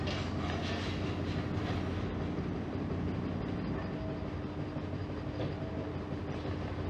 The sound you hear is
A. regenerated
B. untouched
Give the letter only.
B